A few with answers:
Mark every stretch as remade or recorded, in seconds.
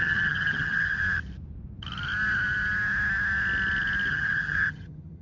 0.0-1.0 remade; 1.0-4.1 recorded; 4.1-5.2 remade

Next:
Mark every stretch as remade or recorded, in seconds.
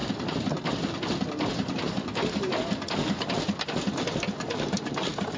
0.0-5.4 recorded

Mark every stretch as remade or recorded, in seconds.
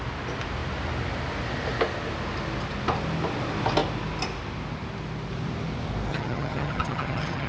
0.0-6.1 recorded; 6.1-7.5 remade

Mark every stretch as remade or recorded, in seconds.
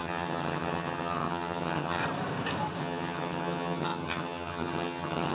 0.0-2.0 remade; 2.0-2.8 recorded; 2.8-5.3 remade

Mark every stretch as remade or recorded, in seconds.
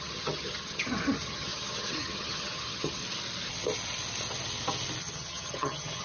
0.0-3.0 remade; 3.0-5.0 recorded; 5.0-6.0 remade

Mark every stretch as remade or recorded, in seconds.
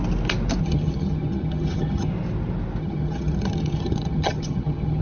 0.0-0.6 recorded; 0.6-2.1 remade; 2.1-2.8 recorded; 2.8-5.0 remade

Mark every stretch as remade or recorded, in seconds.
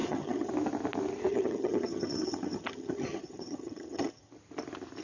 0.0-0.5 remade; 0.5-1.3 recorded; 1.3-4.3 remade; 4.3-5.0 recorded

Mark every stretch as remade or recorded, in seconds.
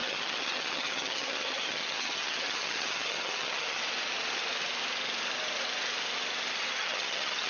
0.0-3.8 remade; 3.8-6.7 recorded; 6.7-7.5 remade